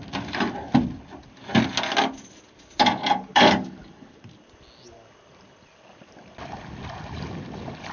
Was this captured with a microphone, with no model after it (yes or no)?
yes